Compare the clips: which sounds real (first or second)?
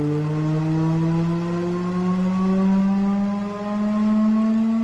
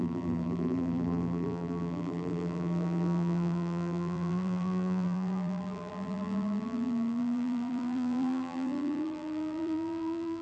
first